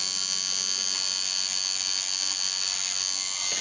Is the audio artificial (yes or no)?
no